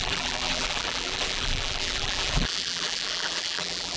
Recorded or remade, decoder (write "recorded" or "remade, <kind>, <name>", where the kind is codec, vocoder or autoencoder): remade, vocoder, BigVGAN v2